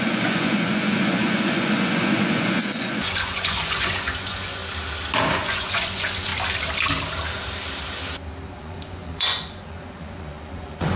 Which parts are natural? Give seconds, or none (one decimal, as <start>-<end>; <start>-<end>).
4.6-5.3; 6.3-8.5